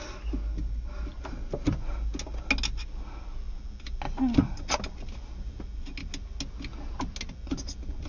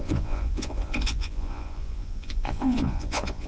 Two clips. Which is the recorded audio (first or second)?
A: first